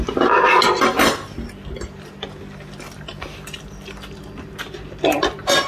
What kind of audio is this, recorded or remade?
recorded